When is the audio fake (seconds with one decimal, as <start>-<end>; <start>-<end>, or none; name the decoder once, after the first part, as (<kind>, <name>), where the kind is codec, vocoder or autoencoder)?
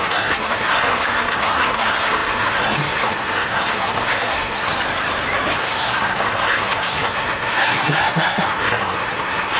0.0-4.7 (codec, SNAC); 5.6-9.6